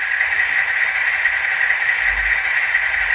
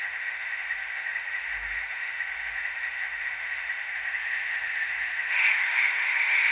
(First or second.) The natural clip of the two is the first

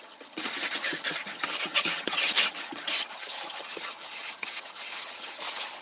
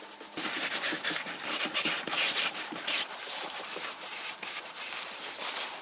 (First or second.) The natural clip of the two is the second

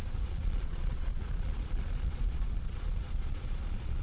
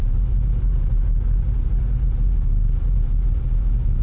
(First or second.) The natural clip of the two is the second